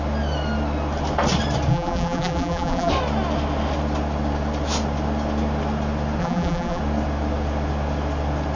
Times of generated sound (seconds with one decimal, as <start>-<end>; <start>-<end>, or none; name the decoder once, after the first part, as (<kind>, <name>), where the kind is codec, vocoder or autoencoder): 1.7-2.9 (vocoder, BigVGAN v2); 6.2-6.8